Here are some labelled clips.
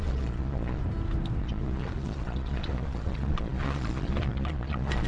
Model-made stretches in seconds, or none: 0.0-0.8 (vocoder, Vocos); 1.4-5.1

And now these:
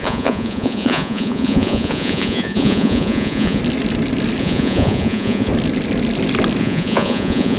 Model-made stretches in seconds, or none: 0.0-3.6 (vocoder, Vocos); 4.4-5.5; 6.6-7.6

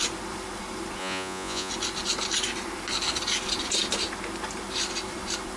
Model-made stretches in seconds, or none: 1.0-1.7 (vocoder, Vocos)

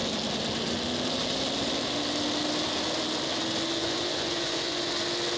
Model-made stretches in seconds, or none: 3.8-4.9 (vocoder, Vocos)

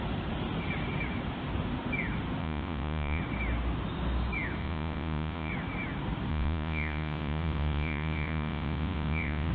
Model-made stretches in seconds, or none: 2.4-3.2 (vocoder, Vocos); 4.6-5.5; 6.3-9.5

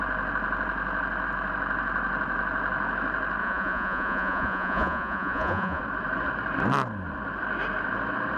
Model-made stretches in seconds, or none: 3.4-5.8 (vocoder, Vocos)

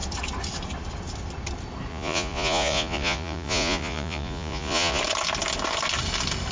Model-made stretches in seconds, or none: 1.9-5.0 (vocoder, Vocos)

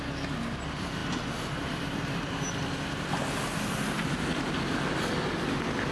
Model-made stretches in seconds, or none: none